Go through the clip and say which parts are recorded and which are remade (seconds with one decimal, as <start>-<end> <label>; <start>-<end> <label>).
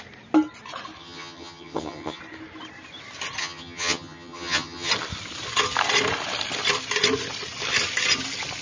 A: 0.0-1.0 recorded; 1.0-2.2 remade; 2.2-3.4 recorded; 3.4-4.9 remade; 4.9-8.6 recorded